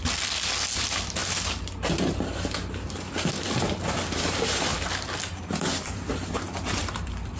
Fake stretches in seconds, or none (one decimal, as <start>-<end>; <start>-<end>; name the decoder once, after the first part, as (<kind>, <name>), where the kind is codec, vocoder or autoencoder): 0.0-1.2 (vocoder, BigVGAN v2); 2.1-4.7; 5.4-7.4